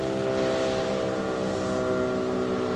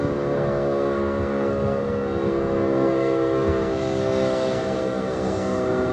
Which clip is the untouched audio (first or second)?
first